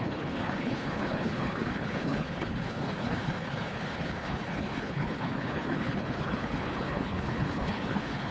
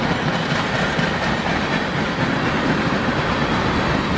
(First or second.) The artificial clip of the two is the first